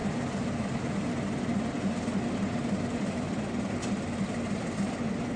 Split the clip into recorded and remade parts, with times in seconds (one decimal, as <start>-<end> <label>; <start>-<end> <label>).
0.0-5.4 recorded